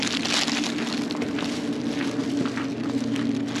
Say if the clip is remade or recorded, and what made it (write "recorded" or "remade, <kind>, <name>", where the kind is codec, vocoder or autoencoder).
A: recorded